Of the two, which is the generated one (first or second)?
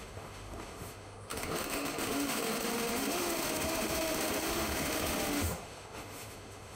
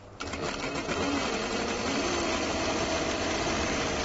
first